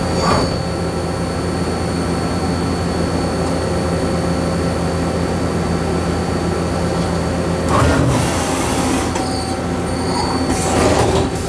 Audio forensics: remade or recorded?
recorded